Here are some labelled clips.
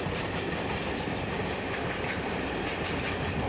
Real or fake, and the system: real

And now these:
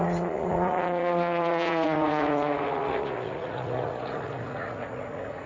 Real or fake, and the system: fake, vocoder, Vocos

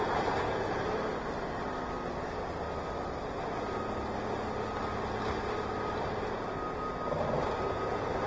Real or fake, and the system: real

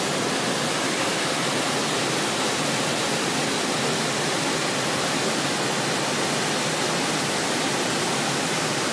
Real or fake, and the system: real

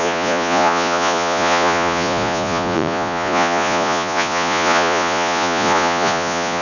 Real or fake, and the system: fake, vocoder, Vocos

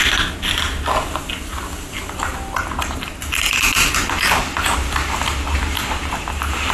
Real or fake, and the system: real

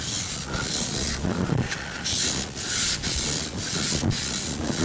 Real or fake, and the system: fake, vocoder, Vocos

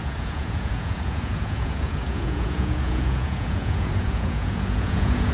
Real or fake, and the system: fake, vocoder, Vocos